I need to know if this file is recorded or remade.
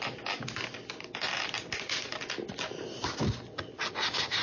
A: recorded